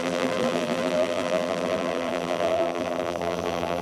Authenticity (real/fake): fake